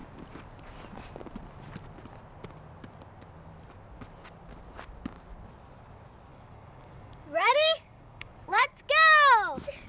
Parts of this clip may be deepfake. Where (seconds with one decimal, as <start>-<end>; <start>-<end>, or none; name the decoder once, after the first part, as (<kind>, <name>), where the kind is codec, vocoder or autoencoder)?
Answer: 6.3-8.8 (codec, DAC)

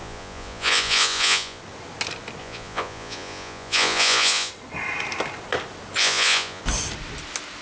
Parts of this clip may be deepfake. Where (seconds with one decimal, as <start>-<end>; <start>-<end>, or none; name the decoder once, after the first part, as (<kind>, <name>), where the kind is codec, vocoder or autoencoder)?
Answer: 0.0-1.6 (vocoder, Vocos); 2.4-4.5; 6.0-6.6